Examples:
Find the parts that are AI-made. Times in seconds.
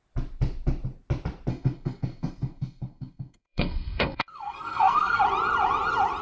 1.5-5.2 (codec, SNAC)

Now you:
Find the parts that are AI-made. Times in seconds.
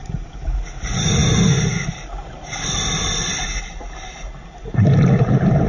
none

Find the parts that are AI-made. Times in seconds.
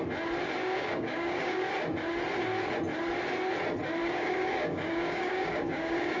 0.6-1.7 (codec, DAC); 4.0-6.2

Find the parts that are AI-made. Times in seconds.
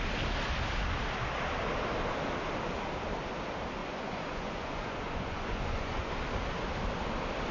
3.8-6.1 (vocoder, Vocos)